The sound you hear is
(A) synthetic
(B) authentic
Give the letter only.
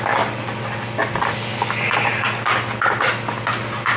B